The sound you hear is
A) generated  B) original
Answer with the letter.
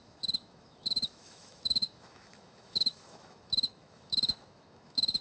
A